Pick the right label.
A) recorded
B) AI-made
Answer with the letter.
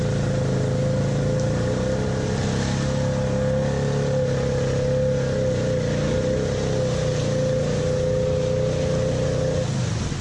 A